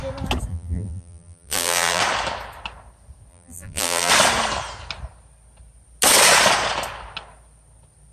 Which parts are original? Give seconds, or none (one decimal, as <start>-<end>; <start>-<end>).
0.0-0.5; 2.0-3.3; 4.1-8.1